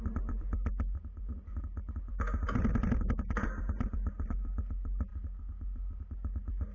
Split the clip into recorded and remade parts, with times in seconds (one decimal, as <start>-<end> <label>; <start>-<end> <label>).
0.0-6.7 recorded